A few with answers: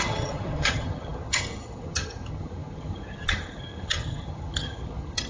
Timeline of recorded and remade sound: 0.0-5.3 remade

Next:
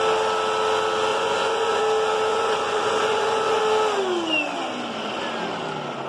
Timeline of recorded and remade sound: 0.0-1.1 recorded; 1.1-1.8 remade; 1.8-2.3 recorded; 2.3-3.6 remade; 3.6-6.1 recorded

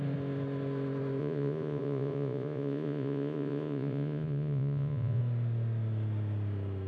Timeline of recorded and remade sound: 0.0-1.2 recorded; 1.2-5.2 remade; 5.2-6.9 recorded

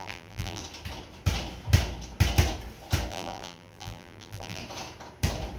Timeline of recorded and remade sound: 0.0-0.6 remade; 0.6-3.1 recorded; 3.1-4.6 remade; 4.6-5.6 recorded

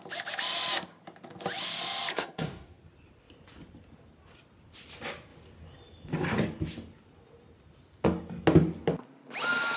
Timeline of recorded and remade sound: 0.0-2.1 recorded; 2.1-2.8 remade; 2.8-9.8 recorded